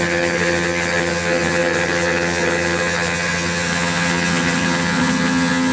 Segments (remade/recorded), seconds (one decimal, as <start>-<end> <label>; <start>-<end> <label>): 0.0-5.7 remade